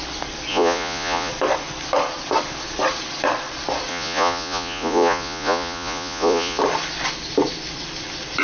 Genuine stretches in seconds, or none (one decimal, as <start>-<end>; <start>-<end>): 0.0-0.5; 1.3-3.9; 6.6-8.4